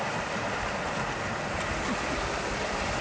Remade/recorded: recorded